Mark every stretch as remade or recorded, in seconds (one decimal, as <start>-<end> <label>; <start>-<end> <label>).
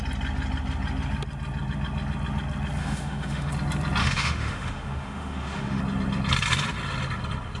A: 0.0-2.8 recorded; 2.8-3.5 remade; 3.5-4.0 recorded; 4.0-5.8 remade; 5.8-7.6 recorded